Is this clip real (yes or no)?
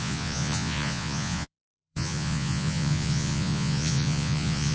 no